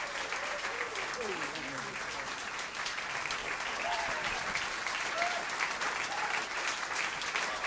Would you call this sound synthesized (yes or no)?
yes